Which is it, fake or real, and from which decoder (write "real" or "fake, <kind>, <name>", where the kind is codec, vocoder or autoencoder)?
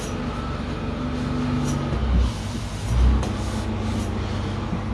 real